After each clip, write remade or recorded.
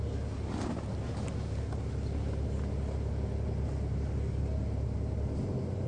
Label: recorded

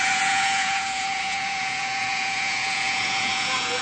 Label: remade